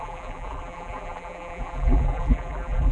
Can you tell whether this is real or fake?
fake